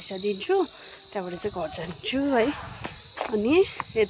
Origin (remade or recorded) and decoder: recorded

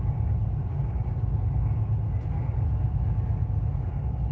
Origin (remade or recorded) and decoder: recorded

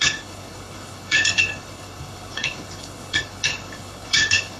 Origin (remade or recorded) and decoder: remade, codec, HILCodec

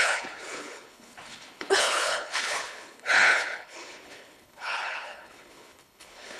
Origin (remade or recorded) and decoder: remade, codec, HILCodec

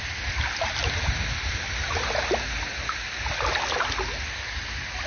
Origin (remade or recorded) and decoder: recorded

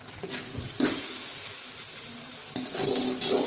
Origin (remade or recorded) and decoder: recorded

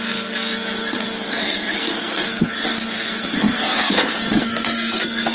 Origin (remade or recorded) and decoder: remade, codec, SNAC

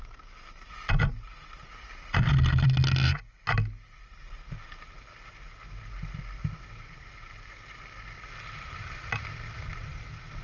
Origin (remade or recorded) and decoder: recorded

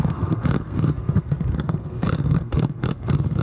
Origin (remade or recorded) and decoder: remade, codec, SNAC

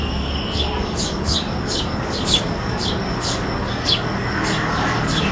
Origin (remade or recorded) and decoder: remade, codec, DAC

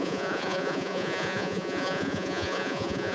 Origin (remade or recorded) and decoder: remade, vocoder, Vocos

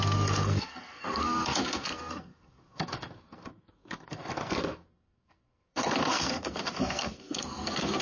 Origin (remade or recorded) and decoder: remade, codec, SNAC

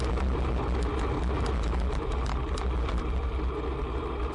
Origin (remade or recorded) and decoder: recorded